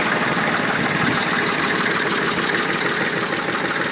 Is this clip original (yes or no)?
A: yes